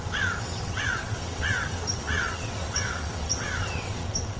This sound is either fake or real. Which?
fake